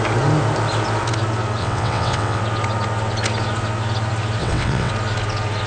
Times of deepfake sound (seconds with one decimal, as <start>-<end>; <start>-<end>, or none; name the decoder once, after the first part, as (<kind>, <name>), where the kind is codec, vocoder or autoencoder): 1.6-2.4 (vocoder, WaveNeXt); 4.4-4.9